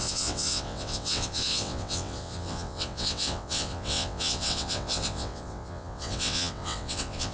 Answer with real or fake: fake